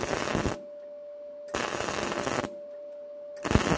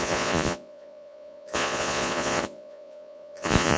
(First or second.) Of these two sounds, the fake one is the second